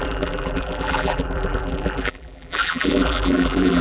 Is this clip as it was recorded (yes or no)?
no